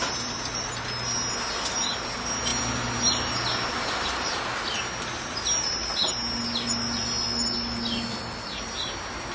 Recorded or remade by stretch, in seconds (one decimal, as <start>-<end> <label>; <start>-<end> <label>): 0.0-9.3 recorded